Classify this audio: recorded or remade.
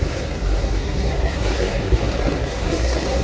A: remade